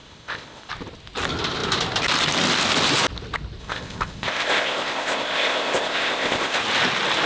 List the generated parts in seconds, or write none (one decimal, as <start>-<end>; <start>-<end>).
0.0-0.7; 3.6-6.6